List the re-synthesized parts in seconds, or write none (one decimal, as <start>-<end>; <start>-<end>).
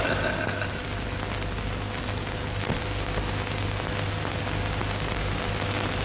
none